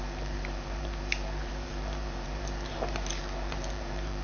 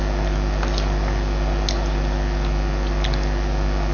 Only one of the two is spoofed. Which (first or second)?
first